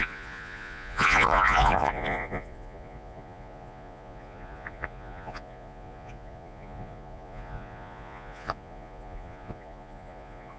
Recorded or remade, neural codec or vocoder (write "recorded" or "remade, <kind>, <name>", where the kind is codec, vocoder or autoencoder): remade, vocoder, Vocos